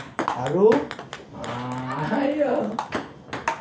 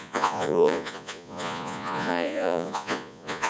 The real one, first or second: first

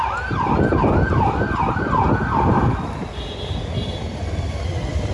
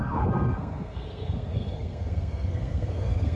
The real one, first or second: first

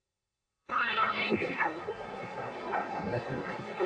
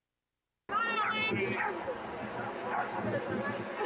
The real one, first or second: second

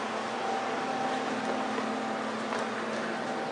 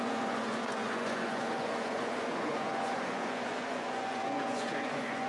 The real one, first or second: first